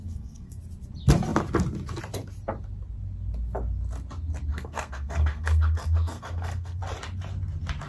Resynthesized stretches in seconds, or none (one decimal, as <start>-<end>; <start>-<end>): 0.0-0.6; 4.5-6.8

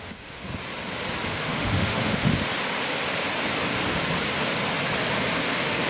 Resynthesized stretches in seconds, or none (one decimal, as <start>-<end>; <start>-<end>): 0.0-0.4; 1.2-2.3; 5.4-5.9

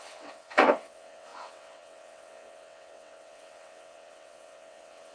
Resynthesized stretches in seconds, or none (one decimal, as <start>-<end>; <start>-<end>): 0.0-5.1

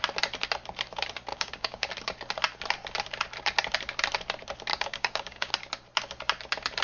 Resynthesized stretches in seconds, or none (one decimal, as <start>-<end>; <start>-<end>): 1.3-1.9; 4.7-5.5

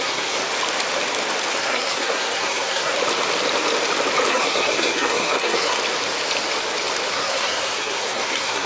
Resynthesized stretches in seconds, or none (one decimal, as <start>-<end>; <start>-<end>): 0.0-0.4; 1.5-2.9; 4.3-5.8; 7.1-8.7